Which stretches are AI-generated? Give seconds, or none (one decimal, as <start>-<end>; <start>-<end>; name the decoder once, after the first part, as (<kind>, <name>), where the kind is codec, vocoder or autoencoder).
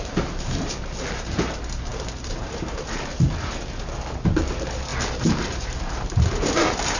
0.0-7.0 (vocoder, BigVGAN v2)